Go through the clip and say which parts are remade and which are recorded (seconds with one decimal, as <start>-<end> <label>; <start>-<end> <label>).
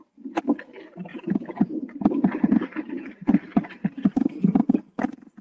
0.0-1.1 recorded; 1.1-2.1 remade; 2.1-5.4 recorded